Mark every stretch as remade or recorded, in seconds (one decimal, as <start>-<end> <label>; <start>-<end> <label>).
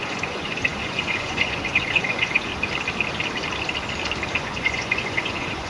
0.0-2.5 remade; 2.5-4.3 recorded; 4.3-5.7 remade